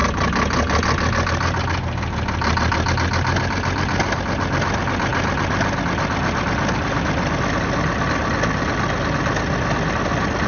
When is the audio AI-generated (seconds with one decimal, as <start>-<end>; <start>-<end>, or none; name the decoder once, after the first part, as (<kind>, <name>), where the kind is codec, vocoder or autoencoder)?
none